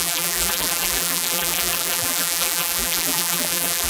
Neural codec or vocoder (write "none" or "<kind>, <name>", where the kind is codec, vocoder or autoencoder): vocoder, BigVGAN v2